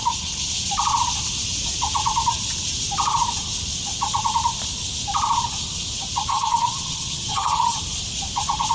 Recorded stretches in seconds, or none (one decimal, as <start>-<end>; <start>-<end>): 0.0-6.3; 7.8-8.7